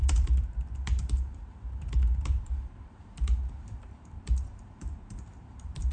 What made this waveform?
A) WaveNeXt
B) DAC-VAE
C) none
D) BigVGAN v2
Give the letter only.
D